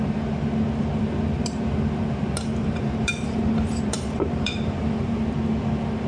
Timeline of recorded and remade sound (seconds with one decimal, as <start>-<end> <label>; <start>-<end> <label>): 0.0-2.6 recorded; 2.6-5.2 remade; 5.2-6.1 recorded